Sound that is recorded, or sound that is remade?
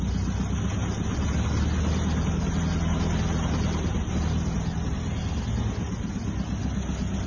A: recorded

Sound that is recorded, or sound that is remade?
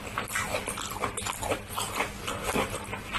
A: recorded